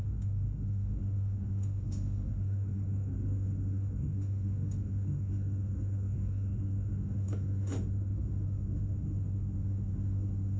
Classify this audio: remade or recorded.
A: remade